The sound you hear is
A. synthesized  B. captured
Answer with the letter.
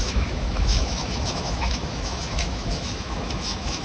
A